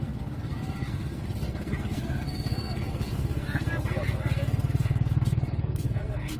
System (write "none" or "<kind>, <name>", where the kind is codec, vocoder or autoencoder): codec, SNAC